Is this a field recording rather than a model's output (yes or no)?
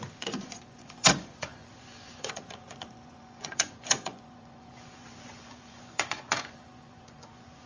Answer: no